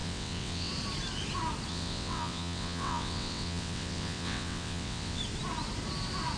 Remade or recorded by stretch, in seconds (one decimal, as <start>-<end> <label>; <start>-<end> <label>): 0.0-0.7 remade; 0.7-1.7 recorded; 1.7-5.2 remade; 5.2-6.4 recorded